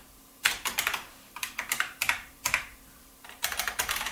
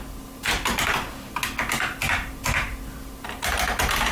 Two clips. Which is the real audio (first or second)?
second